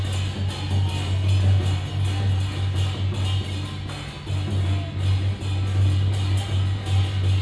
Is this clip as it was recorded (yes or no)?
yes